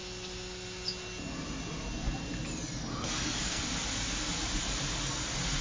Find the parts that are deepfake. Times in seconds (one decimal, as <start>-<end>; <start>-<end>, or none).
2.9-3.6